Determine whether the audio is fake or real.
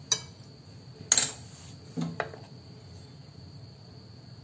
real